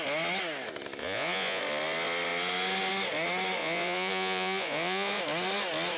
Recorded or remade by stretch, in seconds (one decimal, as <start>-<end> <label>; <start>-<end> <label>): 0.0-1.0 recorded; 1.0-1.6 remade; 1.6-3.6 recorded; 3.6-5.2 remade; 5.2-6.0 recorded